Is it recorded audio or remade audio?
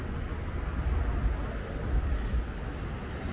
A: recorded